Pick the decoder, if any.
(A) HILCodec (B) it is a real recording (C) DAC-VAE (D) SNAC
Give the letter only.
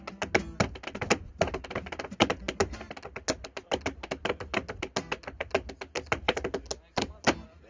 B